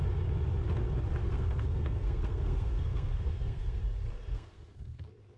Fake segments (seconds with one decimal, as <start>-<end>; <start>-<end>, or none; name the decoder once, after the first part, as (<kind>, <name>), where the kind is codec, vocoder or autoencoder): 1.2-3.8 (codec, SNAC); 4.3-5.0